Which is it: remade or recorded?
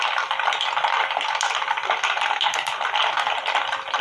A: recorded